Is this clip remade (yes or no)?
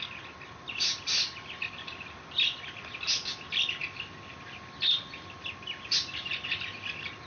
no